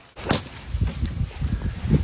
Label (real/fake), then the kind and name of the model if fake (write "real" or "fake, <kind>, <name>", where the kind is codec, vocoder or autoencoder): real